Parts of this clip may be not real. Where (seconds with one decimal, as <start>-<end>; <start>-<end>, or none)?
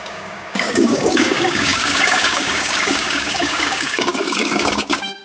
0.0-5.2